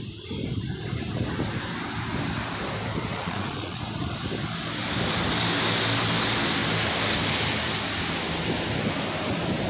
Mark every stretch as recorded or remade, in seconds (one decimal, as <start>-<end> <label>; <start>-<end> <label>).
0.0-3.1 recorded; 3.1-3.8 remade; 3.8-9.7 recorded